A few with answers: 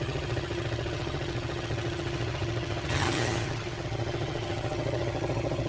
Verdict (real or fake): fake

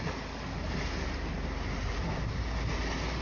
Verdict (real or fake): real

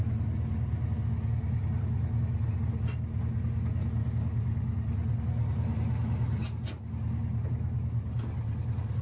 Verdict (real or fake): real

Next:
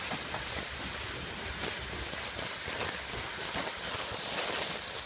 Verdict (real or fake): real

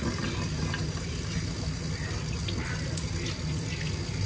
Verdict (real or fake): real